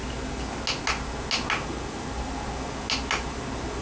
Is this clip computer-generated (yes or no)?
no